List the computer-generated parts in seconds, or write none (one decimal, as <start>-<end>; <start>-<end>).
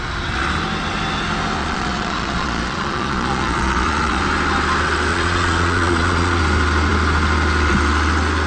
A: 1.6-4.2; 5.1-6.4